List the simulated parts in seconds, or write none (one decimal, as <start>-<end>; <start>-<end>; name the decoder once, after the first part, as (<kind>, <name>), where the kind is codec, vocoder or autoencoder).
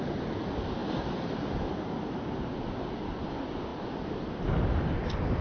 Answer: 3.7-4.4 (vocoder, BigVGAN v2)